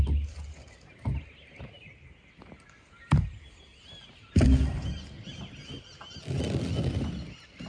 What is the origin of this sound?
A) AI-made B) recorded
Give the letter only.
B